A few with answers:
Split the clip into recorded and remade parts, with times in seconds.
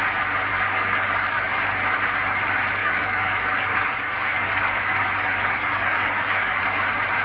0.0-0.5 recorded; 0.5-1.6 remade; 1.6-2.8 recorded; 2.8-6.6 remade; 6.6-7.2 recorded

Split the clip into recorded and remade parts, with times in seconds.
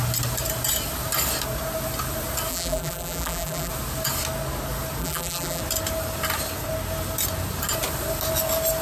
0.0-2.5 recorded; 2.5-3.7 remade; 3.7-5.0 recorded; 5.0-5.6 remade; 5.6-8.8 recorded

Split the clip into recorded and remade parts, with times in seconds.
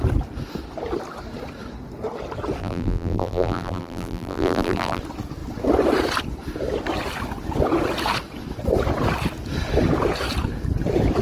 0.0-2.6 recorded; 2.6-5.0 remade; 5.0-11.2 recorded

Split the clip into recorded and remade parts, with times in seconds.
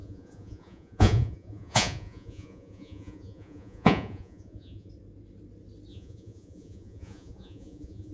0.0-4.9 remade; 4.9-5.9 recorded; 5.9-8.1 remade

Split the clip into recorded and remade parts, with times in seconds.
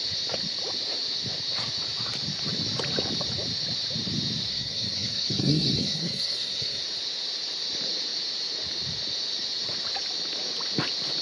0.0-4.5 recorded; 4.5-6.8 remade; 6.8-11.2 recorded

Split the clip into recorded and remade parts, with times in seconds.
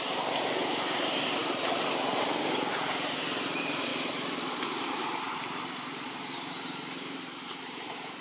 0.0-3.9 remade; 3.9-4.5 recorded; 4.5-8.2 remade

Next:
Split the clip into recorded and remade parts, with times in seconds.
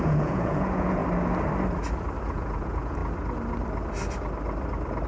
0.0-1.0 remade; 1.0-2.2 recorded; 2.2-3.0 remade; 3.0-5.1 recorded